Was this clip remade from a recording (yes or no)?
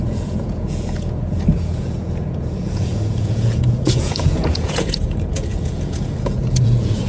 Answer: yes